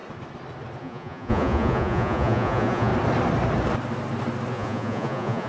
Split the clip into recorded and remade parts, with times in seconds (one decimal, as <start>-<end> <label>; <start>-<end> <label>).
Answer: 0.0-0.8 recorded; 0.8-2.9 remade; 2.9-4.5 recorded; 4.5-5.5 remade